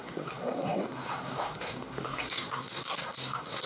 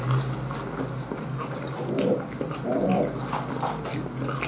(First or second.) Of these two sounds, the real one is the second